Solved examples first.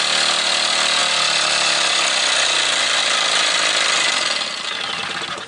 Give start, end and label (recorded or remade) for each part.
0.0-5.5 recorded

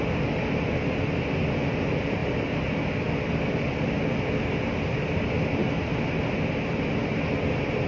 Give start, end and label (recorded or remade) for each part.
0.0-7.9 recorded

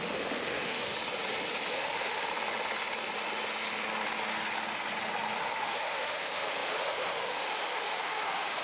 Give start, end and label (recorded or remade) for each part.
0.0-0.9 remade; 0.9-1.7 recorded; 1.7-2.3 remade; 2.3-5.4 recorded; 5.4-8.6 remade

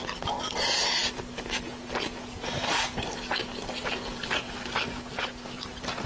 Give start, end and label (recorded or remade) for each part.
0.0-6.1 recorded